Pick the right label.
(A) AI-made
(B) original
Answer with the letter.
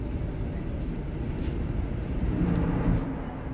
B